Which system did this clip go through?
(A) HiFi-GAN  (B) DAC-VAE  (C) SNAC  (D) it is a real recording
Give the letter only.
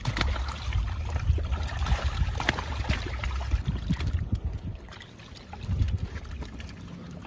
D